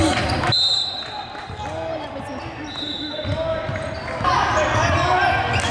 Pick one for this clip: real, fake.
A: real